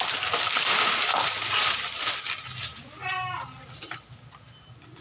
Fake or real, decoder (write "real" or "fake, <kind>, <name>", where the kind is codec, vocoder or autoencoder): real